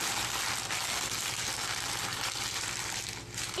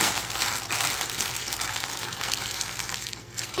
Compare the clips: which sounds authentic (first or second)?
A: first